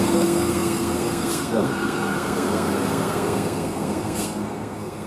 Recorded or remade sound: remade